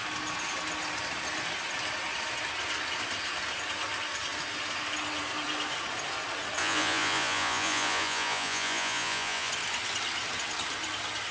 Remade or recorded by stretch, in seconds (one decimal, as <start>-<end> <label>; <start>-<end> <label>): 0.0-6.6 recorded; 6.6-9.5 remade; 9.5-11.3 recorded